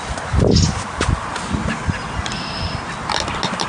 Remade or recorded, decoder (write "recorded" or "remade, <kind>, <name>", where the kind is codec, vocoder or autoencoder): recorded